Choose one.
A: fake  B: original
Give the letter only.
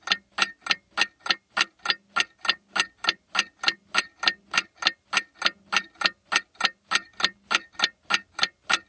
B